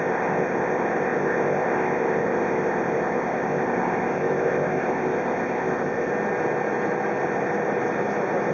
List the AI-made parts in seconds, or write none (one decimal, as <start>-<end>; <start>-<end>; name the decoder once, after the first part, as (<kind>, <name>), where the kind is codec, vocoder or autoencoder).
0.0-6.1 (codec, ZipCodec)